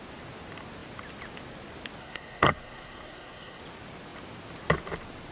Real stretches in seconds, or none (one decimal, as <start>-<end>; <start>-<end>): 0.0-2.0; 3.6-5.3